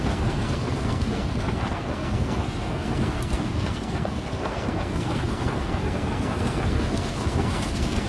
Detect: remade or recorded remade